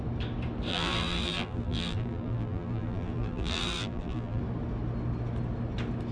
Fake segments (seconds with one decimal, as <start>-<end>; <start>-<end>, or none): 0.7-4.4

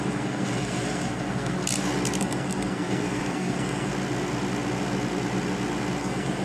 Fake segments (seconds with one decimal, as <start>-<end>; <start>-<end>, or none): 0.0-1.6; 2.2-3.9; 6.0-6.4

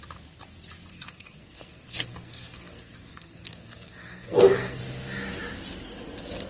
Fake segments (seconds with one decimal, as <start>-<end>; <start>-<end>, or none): 0.9-4.8

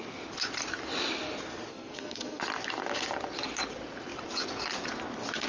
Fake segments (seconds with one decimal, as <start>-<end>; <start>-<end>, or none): 1.7-2.4